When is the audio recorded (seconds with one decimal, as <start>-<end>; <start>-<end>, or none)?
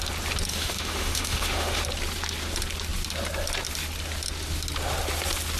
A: 0.0-0.5; 1.8-5.6